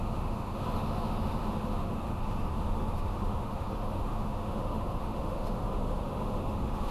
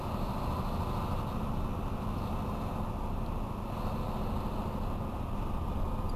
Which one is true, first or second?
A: second